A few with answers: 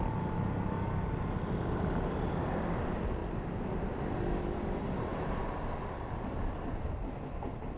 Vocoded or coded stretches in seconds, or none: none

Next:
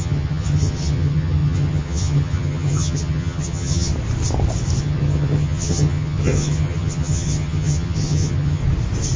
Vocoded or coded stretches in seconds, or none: 0.0-3.9 (vocoder, HiFi-GAN); 4.8-8.6

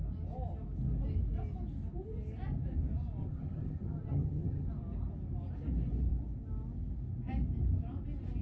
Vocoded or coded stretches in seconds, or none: 3.2-4.7 (vocoder, HiFi-GAN)

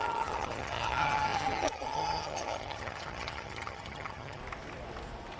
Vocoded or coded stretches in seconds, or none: 0.0-4.4 (vocoder, HiFi-GAN)

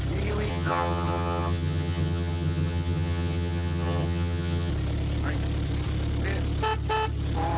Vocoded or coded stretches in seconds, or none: 0.5-4.7 (vocoder, HiFi-GAN)

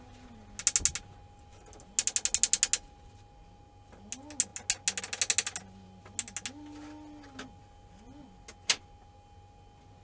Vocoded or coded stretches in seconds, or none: none